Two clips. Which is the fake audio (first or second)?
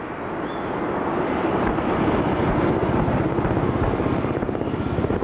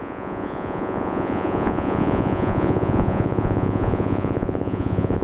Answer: second